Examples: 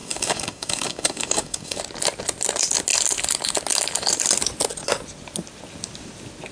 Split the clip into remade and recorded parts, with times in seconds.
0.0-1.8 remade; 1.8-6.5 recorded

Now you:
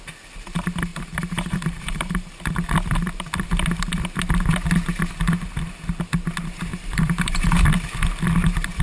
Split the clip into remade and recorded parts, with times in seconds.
0.0-0.9 recorded; 0.9-2.3 remade; 2.3-6.7 recorded; 6.7-7.6 remade; 7.6-8.8 recorded

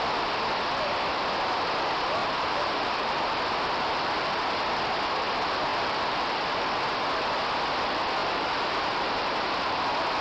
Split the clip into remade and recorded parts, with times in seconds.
0.0-2.2 recorded; 2.2-3.2 remade; 3.2-8.2 recorded; 8.2-9.6 remade; 9.6-10.2 recorded